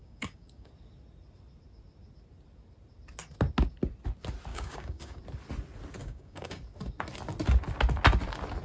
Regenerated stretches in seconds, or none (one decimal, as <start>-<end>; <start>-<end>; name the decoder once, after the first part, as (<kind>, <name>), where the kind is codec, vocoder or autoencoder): 0.0-0.7 (codec, DAC); 4.5-5.2; 6.0-6.6